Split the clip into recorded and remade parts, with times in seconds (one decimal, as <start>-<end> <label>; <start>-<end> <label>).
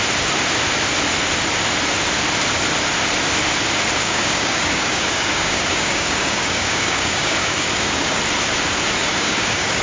0.0-4.0 recorded; 4.0-8.2 remade; 8.2-9.0 recorded; 9.0-9.8 remade